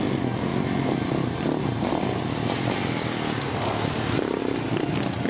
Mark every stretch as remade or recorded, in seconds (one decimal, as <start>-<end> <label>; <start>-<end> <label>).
0.0-5.3 recorded